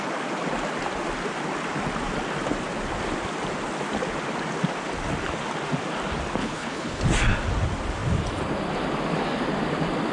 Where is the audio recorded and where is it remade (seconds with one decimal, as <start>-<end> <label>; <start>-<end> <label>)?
0.0-6.4 recorded; 6.4-7.0 remade; 7.0-10.1 recorded